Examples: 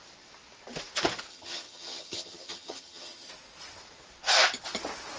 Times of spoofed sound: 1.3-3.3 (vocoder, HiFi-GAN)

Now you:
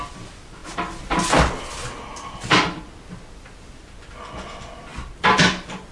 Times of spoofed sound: none

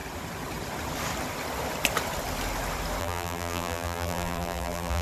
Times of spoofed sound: 3.0-5.0 (vocoder, BigVGAN v2)